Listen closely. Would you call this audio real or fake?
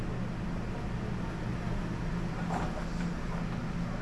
real